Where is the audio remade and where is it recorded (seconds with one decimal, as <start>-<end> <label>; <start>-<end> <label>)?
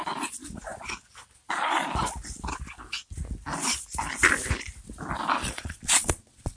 0.0-5.4 recorded; 5.4-6.6 remade